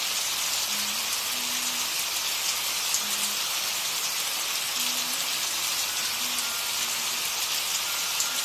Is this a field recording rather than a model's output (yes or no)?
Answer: yes